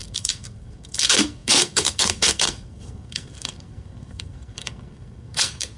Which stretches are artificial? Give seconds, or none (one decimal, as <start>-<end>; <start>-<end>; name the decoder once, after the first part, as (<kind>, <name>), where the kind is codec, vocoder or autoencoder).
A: 0.0-5.8 (codec, SNAC)